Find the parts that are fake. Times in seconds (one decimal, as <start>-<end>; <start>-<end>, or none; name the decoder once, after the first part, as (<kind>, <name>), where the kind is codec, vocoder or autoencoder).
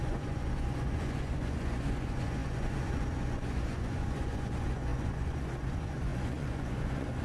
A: 0.0-7.2 (vocoder, Vocos)